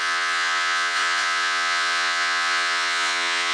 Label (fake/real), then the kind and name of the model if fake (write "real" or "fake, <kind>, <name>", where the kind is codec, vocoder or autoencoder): fake, vocoder, Vocos